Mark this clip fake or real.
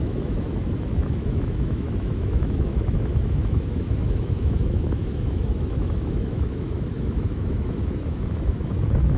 fake